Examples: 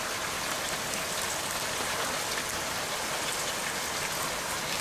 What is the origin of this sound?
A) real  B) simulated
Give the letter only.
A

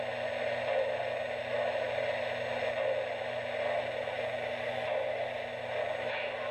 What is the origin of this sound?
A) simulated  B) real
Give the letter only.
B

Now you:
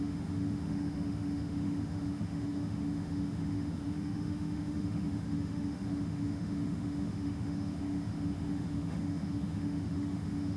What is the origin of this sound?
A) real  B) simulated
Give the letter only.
B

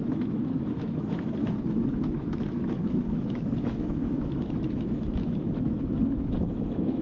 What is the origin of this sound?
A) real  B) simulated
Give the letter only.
B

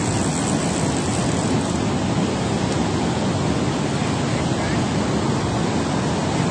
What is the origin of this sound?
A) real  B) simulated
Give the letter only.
A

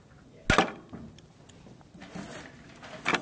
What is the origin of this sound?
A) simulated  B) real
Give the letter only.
B